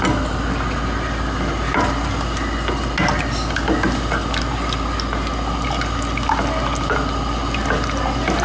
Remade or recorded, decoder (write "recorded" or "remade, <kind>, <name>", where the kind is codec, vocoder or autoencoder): recorded